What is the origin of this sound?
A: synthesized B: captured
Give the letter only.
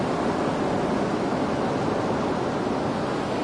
B